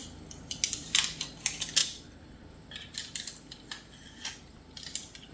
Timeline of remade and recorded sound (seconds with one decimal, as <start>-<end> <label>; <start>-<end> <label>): 0.0-5.3 recorded